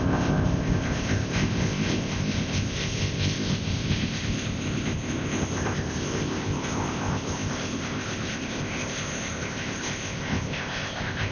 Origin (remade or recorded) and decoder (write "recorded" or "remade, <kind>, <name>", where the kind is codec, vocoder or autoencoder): remade, codec, ZipCodec